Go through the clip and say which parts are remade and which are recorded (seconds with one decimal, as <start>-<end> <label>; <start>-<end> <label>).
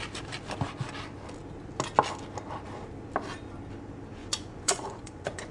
0.0-4.2 recorded; 4.2-5.5 remade